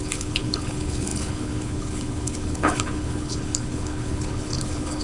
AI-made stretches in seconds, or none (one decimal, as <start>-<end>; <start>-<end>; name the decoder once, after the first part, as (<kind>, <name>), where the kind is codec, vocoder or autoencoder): 0.0-5.0 (codec, HILCodec)